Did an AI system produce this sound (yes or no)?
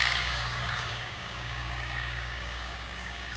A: yes